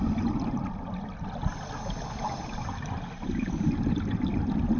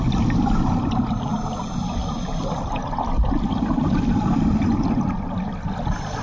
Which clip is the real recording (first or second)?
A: first